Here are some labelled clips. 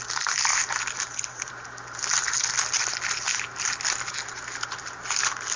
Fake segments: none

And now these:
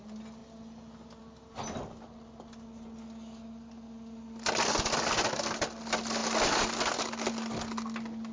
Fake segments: none

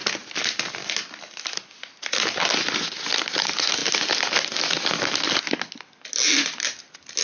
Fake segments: none

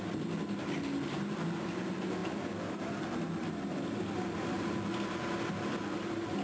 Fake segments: none